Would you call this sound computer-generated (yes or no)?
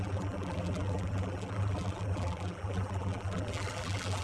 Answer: yes